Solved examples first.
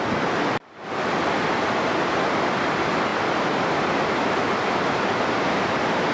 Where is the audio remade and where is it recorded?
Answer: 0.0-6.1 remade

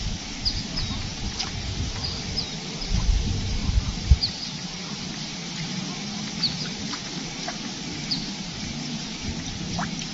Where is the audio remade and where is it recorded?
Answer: 0.0-3.6 recorded; 3.6-5.0 remade; 5.0-10.1 recorded

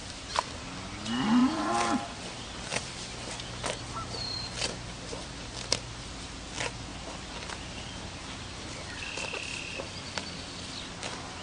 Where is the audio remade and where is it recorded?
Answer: 0.0-0.6 remade; 0.6-1.4 recorded; 1.4-2.1 remade; 2.1-2.7 recorded; 2.7-6.2 remade; 6.2-6.9 recorded; 6.9-10.5 remade; 10.5-11.4 recorded